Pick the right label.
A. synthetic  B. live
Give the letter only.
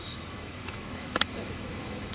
A